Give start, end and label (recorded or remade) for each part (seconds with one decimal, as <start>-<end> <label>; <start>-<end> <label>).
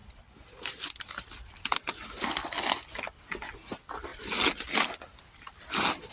0.0-2.6 remade; 2.6-6.1 recorded